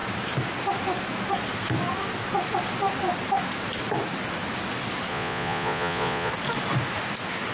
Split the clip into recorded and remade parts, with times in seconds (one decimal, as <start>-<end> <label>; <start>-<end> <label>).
0.0-5.1 recorded; 5.1-6.3 remade; 6.3-7.5 recorded